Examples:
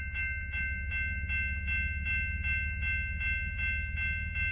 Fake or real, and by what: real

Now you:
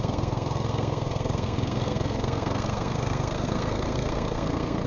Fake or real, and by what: fake, codec, SNAC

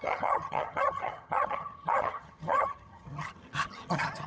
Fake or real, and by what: fake, vocoder, HiFi-GAN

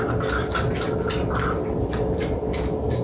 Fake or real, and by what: real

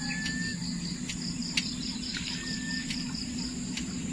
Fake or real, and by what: real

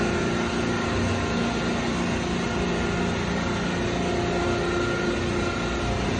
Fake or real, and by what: real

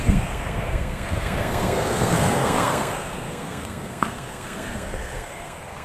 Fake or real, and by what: fake, codec, SNAC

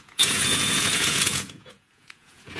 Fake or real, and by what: fake, vocoder, Vocos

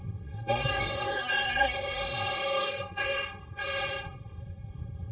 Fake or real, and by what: fake, codec, SNAC